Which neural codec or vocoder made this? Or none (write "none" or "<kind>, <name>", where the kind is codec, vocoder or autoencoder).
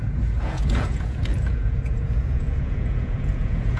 vocoder, Vocos